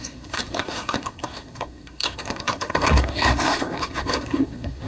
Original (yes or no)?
no